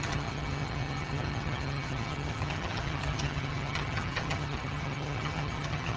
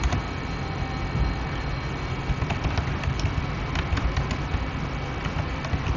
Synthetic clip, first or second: first